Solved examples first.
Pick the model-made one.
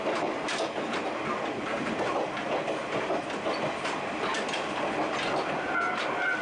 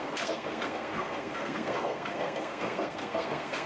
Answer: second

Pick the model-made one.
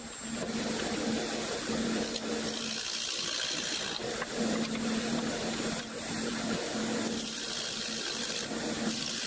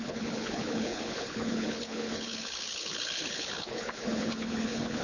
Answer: second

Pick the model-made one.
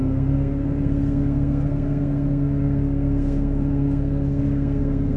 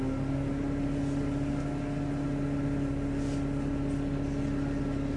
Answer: first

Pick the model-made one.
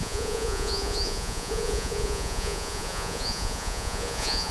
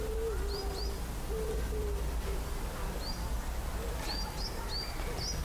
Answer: first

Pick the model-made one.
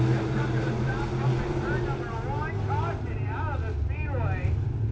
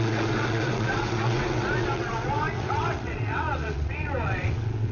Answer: second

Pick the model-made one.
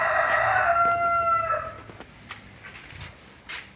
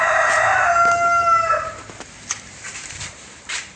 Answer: second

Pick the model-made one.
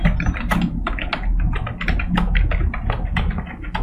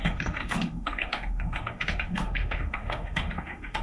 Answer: second